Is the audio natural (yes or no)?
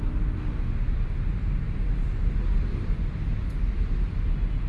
yes